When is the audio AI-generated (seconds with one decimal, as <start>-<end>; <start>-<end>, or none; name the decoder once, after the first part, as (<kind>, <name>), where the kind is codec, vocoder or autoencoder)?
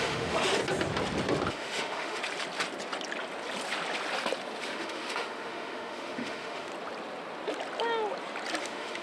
0.0-0.6 (autoencoder, DAC-VAE); 1.5-2.2; 4.6-6.7; 8.6-9.0